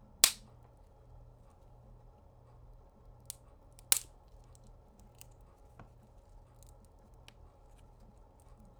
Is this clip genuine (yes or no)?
yes